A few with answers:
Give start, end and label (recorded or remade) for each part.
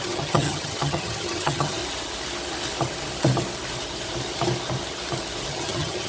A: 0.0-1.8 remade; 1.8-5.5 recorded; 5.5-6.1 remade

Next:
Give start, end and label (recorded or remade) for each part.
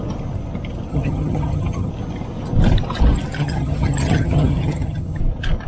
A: 0.0-0.9 recorded; 0.9-1.9 remade; 1.9-3.4 recorded; 3.4-5.2 remade; 5.2-5.7 recorded